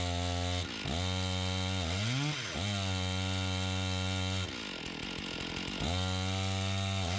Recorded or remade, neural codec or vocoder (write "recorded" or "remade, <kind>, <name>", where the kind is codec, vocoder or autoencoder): recorded